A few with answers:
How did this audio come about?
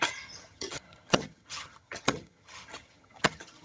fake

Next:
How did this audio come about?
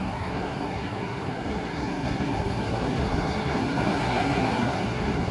fake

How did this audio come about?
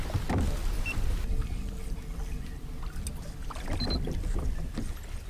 real